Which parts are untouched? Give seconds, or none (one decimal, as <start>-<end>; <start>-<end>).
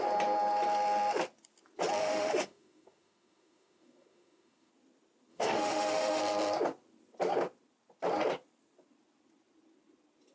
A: 0.0-2.0; 4.7-5.3; 6.2-10.3